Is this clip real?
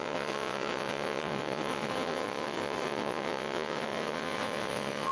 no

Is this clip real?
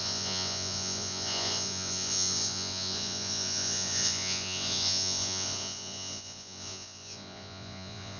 no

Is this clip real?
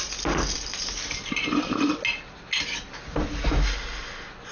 yes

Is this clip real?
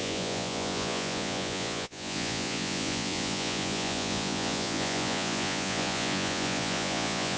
no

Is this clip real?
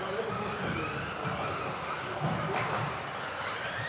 yes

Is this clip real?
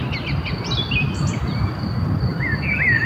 yes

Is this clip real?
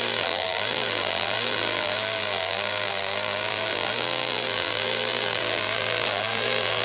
no